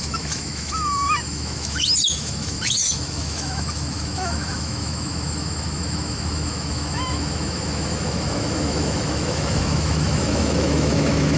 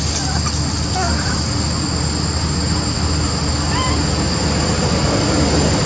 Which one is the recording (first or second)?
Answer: second